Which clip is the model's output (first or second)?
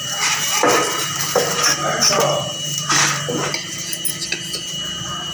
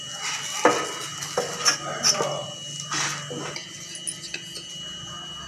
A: first